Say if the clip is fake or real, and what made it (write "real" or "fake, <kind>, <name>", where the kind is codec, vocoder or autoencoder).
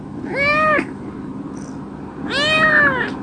real